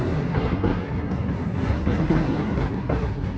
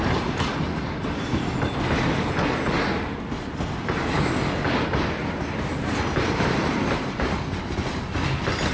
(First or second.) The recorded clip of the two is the second